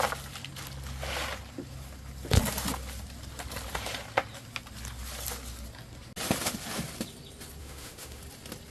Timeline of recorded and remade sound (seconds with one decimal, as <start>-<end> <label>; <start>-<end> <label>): 0.0-7.6 recorded; 7.6-8.2 remade; 8.2-8.7 recorded

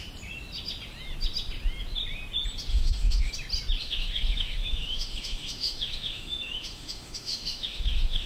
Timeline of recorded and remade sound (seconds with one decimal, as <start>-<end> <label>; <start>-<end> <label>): 0.0-2.7 recorded; 2.7-3.3 remade; 3.3-3.8 recorded; 3.8-8.3 remade